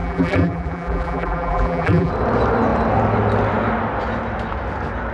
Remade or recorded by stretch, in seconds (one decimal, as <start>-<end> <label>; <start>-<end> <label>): 0.0-2.1 remade; 2.1-5.1 recorded